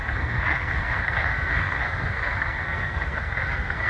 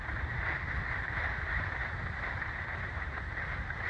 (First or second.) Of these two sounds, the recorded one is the second